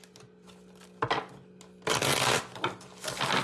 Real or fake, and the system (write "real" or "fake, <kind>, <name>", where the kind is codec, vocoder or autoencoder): real